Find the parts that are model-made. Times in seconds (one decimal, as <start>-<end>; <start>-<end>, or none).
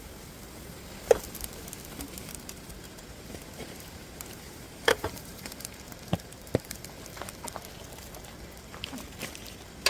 2.2-6.8